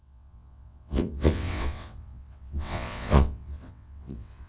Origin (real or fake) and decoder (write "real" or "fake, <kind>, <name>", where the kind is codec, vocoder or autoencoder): fake, vocoder, WaveNeXt